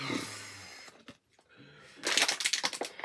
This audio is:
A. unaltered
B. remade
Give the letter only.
A